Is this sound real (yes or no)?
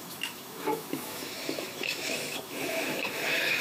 no